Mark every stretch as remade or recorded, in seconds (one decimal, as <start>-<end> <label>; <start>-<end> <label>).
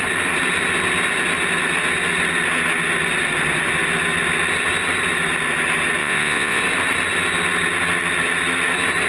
0.0-6.0 recorded; 6.0-6.6 remade; 6.6-9.1 recorded